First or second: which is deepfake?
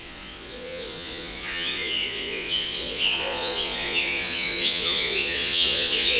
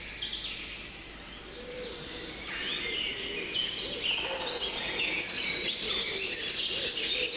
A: first